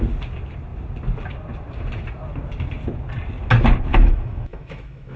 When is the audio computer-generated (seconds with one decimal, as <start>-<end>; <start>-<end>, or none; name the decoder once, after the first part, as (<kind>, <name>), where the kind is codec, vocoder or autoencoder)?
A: 3.9-5.2 (autoencoder, DAC-VAE)